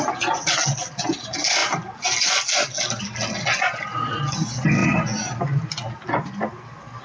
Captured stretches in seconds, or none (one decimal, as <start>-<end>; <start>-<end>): 0.0-7.0